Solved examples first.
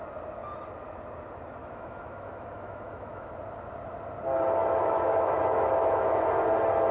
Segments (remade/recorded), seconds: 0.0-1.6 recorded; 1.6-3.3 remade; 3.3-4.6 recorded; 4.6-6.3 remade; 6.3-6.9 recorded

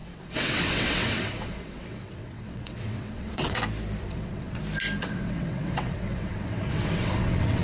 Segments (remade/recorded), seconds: 0.0-3.6 remade; 3.6-4.0 recorded; 4.0-4.6 remade; 4.6-5.0 recorded; 5.0-7.6 remade

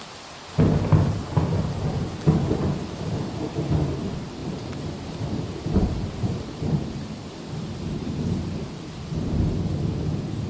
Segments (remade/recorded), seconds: 0.0-4.4 recorded; 4.4-6.9 remade; 6.9-10.5 recorded

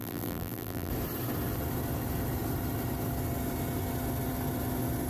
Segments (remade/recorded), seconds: 0.0-0.9 remade; 0.9-5.1 recorded

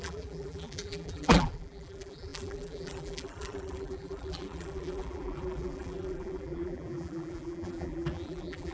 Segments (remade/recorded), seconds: 0.0-8.7 remade

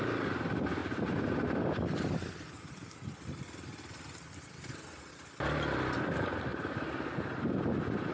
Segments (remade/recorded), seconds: 0.0-8.1 recorded

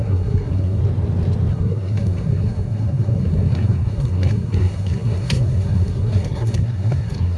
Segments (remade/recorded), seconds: 0.0-0.8 remade; 0.8-1.5 recorded; 1.5-7.4 remade